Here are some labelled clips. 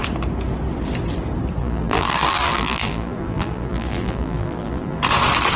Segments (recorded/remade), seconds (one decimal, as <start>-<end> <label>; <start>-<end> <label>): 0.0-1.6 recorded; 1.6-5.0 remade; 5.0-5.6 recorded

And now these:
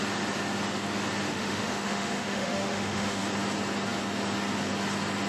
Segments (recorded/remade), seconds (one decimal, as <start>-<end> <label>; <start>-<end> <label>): 0.0-1.3 recorded; 1.3-3.2 remade; 3.2-5.3 recorded

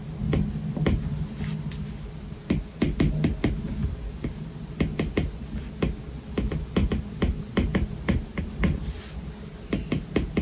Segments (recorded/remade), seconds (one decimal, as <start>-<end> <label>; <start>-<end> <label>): 0.0-10.4 recorded